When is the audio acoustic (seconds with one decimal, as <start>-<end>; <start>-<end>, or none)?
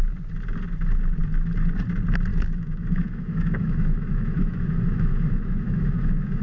0.0-2.3